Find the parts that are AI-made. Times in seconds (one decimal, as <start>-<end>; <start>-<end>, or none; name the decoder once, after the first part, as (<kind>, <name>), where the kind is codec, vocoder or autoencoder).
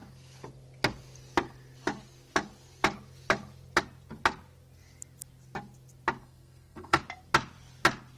6.2-7.0 (codec, SNAC)